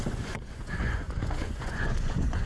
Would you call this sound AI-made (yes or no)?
yes